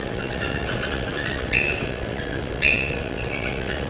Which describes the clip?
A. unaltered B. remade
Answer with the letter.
B